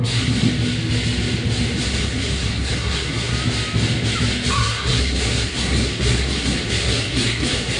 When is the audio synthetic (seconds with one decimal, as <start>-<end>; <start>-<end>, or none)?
0.0-0.5; 1.8-3.3; 4.5-7.8